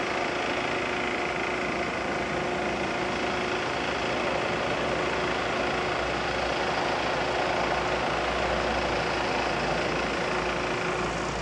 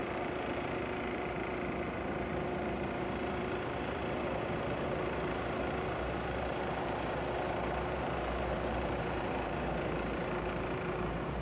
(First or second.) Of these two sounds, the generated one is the second